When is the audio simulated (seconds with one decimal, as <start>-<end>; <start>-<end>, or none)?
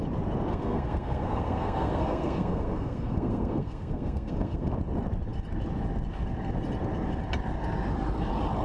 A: 0.5-4.7